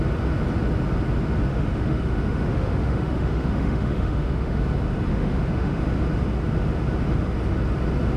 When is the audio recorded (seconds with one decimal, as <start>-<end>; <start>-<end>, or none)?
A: 0.0-1.5; 4.6-5.1; 5.8-8.2